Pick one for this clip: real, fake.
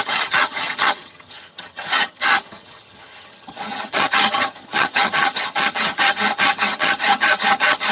fake